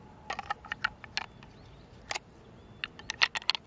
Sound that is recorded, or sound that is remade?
recorded